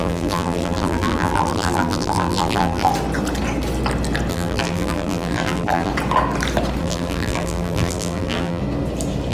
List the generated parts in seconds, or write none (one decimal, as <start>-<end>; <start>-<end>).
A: 0.0-2.9; 4.3-5.9; 6.8-8.6